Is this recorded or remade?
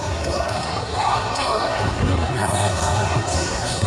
remade